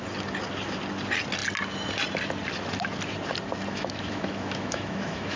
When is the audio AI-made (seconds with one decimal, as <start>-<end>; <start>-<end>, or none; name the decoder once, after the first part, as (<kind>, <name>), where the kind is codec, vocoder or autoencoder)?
3.7-5.4 (autoencoder, DAC-VAE)